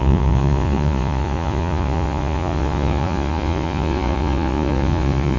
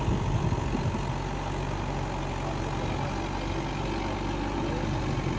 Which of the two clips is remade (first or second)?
first